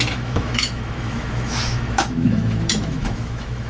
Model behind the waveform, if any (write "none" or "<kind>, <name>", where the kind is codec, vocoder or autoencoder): autoencoder, DAC-VAE